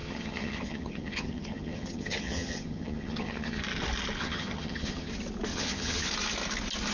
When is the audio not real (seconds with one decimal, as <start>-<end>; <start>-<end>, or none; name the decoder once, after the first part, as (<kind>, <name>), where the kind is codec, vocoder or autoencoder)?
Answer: 0.0-3.6 (vocoder, HiFi-GAN); 4.2-5.1; 5.5-6.1